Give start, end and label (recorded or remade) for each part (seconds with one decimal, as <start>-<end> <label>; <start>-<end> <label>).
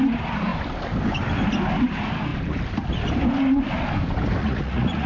0.0-4.4 recorded; 4.4-5.1 remade